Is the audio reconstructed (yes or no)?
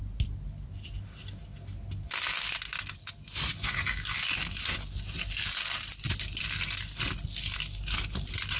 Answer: no